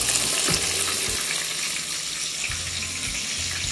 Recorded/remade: recorded